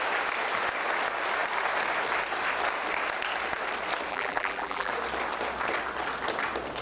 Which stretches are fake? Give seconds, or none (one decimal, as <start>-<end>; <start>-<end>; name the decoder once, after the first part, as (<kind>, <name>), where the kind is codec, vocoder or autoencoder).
4.1-4.9 (vocoder, BigVGAN v2)